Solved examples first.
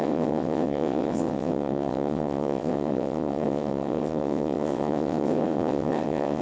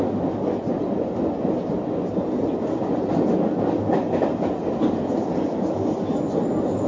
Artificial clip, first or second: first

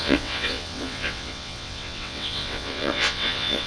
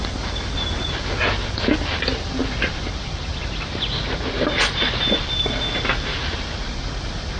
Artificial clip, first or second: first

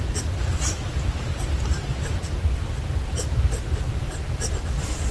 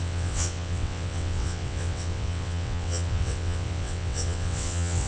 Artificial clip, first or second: second